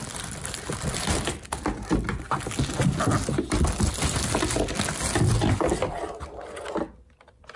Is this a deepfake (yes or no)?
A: no